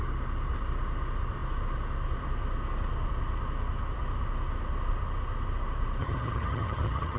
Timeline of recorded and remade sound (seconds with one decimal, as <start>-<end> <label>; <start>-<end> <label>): 0.0-6.0 recorded; 6.0-7.2 remade